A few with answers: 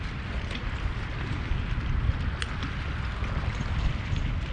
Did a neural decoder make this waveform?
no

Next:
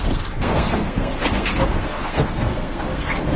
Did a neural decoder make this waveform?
yes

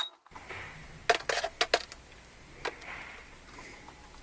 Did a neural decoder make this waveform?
no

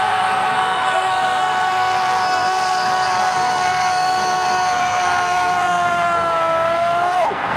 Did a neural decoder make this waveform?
yes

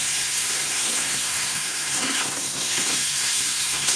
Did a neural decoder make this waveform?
yes